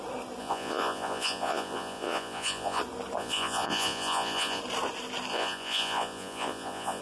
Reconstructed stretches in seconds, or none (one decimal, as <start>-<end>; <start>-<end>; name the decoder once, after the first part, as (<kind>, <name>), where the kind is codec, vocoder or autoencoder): 0.4-2.8 (vocoder, Vocos); 3.2-4.6; 5.3-7.0

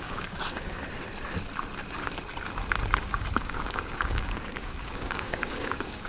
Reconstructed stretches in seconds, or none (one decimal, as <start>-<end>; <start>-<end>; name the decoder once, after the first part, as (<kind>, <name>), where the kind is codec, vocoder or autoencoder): 0.0-0.8 (codec, DAC); 3.0-6.1

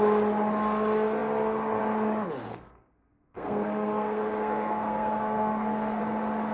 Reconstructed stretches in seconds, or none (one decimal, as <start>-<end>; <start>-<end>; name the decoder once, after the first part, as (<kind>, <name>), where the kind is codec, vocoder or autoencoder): 2.5-6.0 (codec, SNAC)

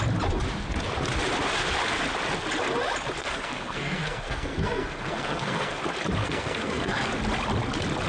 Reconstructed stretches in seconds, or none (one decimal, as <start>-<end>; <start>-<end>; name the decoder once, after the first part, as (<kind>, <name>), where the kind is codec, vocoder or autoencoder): 3.2-5.8 (codec, SNAC); 6.2-7.1

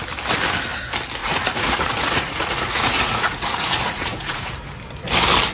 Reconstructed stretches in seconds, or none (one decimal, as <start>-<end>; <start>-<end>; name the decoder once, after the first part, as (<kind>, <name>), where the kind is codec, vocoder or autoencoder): 1.2-4.5 (vocoder, Vocos)

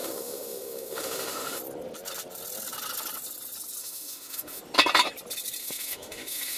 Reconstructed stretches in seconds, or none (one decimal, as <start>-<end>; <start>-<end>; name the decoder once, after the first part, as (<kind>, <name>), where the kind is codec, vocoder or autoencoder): 0.0-1.6 (autoencoder, DAC-VAE); 3.8-4.6; 5.6-6.6